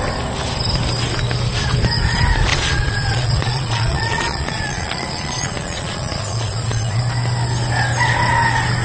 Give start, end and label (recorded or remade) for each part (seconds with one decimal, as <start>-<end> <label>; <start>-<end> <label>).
0.0-2.5 recorded; 2.5-7.0 remade; 7.0-8.8 recorded